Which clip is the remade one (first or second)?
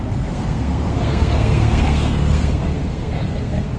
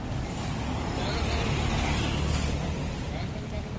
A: first